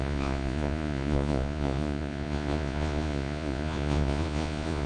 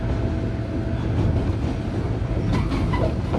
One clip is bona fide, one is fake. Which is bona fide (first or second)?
second